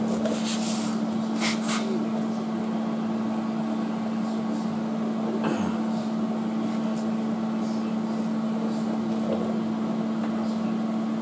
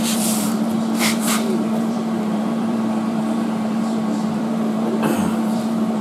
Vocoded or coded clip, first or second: second